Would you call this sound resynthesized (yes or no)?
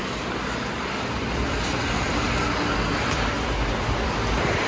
no